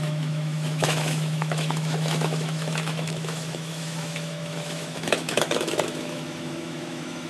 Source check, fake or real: fake